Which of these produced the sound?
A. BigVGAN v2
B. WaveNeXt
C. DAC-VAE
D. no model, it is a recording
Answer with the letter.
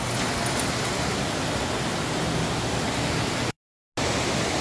D